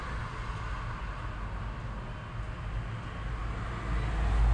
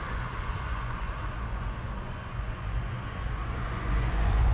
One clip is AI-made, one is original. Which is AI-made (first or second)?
second